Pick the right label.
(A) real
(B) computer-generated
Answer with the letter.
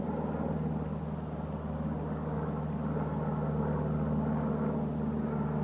A